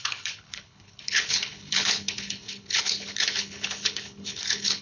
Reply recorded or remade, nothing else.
remade